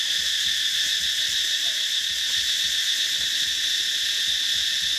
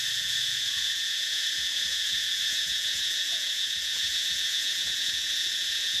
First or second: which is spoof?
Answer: second